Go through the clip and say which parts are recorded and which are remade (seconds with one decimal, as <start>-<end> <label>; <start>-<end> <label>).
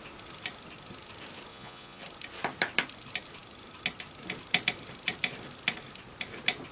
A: 0.0-1.5 recorded; 1.5-2.0 remade; 2.0-6.7 recorded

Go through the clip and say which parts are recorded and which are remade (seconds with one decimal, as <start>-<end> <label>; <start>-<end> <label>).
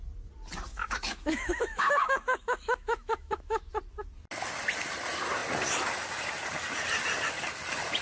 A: 0.0-0.7 recorded; 0.7-3.7 remade; 3.7-8.0 recorded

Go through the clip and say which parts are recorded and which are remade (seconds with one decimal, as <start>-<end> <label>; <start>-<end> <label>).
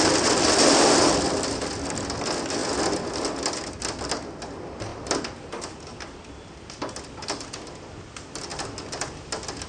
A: 0.0-9.7 recorded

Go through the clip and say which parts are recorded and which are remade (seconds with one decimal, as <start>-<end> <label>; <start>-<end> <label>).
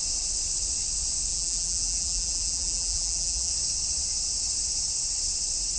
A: 0.0-1.3 recorded; 1.3-3.5 remade; 3.5-5.8 recorded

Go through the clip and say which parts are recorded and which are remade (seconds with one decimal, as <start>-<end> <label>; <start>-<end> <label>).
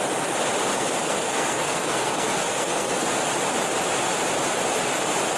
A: 0.0-0.7 recorded; 0.7-3.1 remade; 3.1-5.4 recorded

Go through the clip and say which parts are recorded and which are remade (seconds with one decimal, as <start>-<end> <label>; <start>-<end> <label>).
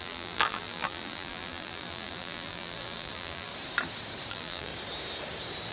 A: 0.0-3.5 remade; 3.5-4.3 recorded; 4.3-4.7 remade; 4.7-5.7 recorded